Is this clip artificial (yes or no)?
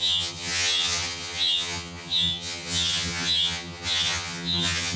yes